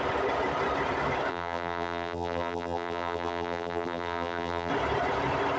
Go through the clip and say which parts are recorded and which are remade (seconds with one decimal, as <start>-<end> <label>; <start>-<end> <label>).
0.0-1.3 recorded; 1.3-4.7 remade; 4.7-5.6 recorded